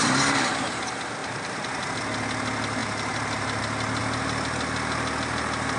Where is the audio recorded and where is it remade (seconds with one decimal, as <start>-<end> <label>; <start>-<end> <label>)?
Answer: 0.0-1.2 recorded; 1.2-1.9 remade; 1.9-2.8 recorded; 2.8-3.6 remade; 3.6-5.8 recorded